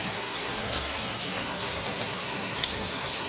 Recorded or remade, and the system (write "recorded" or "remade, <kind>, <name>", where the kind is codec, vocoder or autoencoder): remade, codec, SNAC